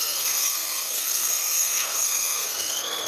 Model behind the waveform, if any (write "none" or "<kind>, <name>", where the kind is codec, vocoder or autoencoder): codec, SNAC